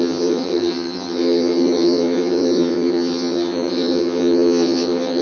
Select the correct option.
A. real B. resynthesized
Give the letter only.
B